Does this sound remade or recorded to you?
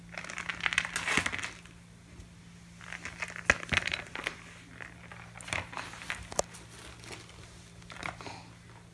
recorded